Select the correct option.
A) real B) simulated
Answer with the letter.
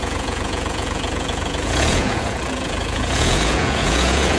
B